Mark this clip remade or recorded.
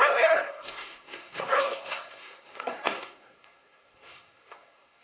remade